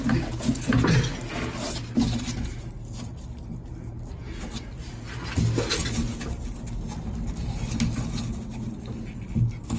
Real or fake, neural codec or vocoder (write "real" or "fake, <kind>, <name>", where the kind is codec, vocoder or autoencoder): real